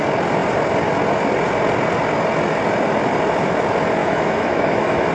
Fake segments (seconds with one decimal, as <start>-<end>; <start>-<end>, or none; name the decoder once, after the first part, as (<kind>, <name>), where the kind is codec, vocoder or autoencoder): 4.0-5.1 (autoencoder, DAC-VAE)